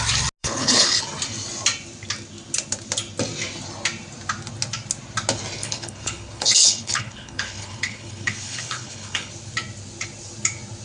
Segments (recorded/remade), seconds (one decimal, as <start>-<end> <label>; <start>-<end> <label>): 0.0-0.4 recorded; 0.4-1.0 remade; 1.0-5.6 recorded; 5.6-9.3 remade; 9.3-10.8 recorded